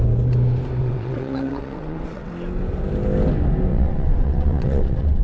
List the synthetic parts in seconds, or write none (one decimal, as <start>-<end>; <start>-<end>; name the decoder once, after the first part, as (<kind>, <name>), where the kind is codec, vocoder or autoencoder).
0.8-2.3 (vocoder, WaveNeXt); 3.7-5.2